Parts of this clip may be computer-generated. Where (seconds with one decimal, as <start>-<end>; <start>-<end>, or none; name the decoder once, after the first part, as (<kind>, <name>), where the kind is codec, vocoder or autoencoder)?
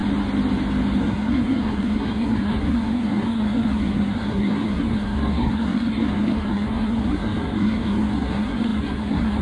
1.0-9.4 (codec, SNAC)